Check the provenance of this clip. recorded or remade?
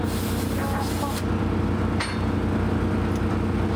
recorded